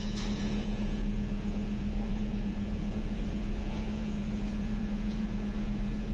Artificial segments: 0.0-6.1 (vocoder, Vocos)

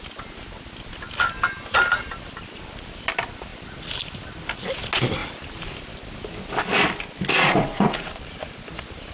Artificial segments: 7.3-8.1 (vocoder, Vocos)

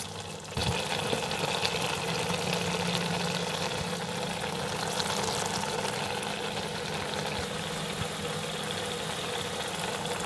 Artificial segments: none

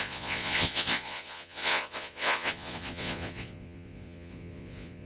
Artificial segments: 0.0-5.1 (vocoder, Vocos)

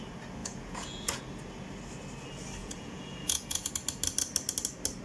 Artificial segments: 0.4-1.2 (vocoder, Vocos); 2.6-3.7

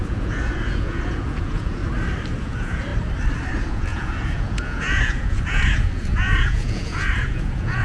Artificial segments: 0.0-1.8 (vocoder, Vocos); 2.4-2.9; 3.5-7.8

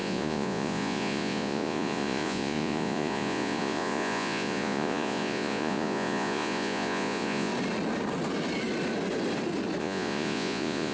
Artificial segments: 0.0-7.5 (vocoder, Vocos); 9.8-10.9